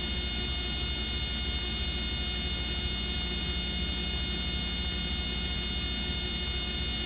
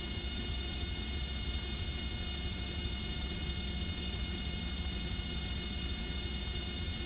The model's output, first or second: second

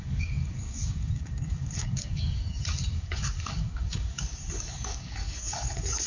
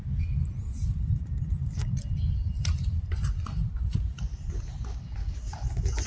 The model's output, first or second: first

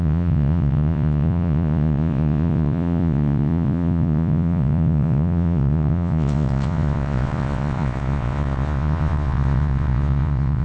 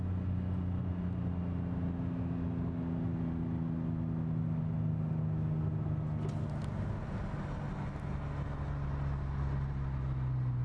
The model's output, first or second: first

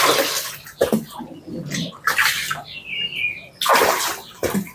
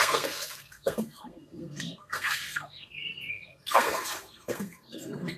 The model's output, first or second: second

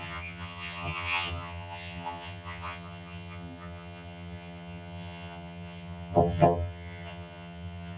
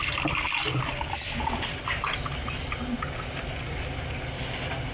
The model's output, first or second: first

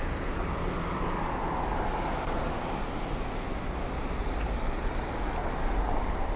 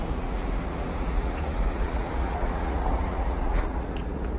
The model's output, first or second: second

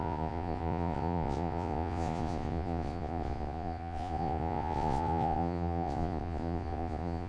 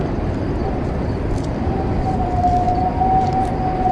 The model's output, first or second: first